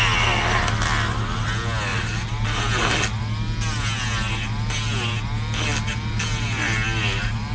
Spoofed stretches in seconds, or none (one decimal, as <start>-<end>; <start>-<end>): none